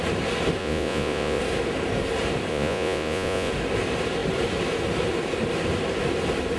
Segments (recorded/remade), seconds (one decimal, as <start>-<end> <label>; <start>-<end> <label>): 0.0-0.6 recorded; 0.6-1.4 remade; 1.4-2.5 recorded; 2.5-3.5 remade; 3.5-6.6 recorded